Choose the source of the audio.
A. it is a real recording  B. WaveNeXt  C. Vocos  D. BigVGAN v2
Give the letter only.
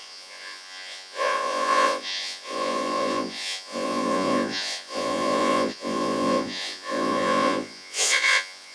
C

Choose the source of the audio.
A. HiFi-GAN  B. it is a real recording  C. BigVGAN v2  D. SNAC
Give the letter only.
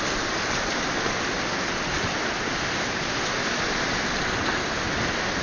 B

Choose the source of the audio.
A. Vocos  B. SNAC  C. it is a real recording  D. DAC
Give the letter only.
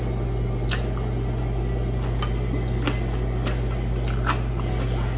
C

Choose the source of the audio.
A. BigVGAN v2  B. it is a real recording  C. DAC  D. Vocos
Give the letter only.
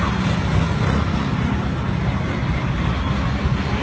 B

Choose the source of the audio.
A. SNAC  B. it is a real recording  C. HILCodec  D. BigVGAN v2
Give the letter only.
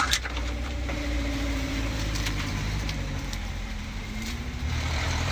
D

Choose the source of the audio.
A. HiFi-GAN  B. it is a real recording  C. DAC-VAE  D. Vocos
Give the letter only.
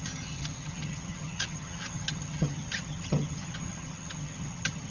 A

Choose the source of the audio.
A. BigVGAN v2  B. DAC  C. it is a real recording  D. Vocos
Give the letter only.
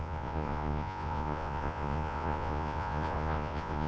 D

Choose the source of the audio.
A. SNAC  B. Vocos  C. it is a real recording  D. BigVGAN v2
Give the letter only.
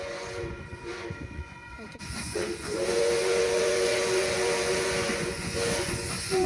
B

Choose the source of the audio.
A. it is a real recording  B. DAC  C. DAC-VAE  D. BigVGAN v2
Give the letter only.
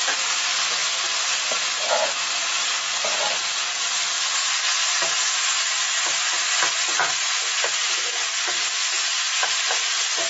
A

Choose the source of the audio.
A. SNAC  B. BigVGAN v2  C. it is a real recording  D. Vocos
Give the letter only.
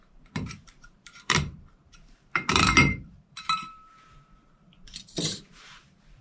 B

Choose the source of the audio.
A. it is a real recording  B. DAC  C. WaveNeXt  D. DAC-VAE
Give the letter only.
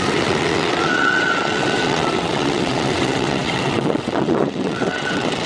C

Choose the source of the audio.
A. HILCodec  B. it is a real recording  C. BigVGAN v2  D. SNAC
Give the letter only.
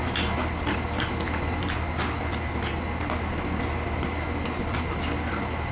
B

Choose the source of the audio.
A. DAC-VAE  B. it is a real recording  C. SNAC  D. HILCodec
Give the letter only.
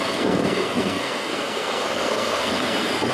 C